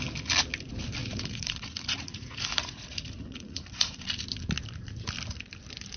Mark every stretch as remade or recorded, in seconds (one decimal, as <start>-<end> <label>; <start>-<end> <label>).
0.0-1.0 recorded; 1.0-3.9 remade; 3.9-6.0 recorded